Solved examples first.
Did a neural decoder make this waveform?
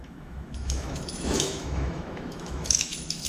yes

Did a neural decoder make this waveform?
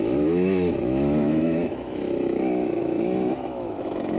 yes